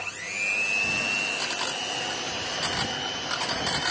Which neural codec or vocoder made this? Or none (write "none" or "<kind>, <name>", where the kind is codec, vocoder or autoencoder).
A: none